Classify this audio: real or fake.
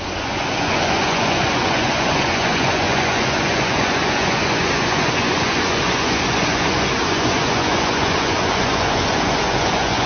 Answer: fake